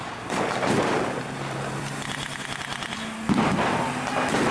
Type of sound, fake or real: real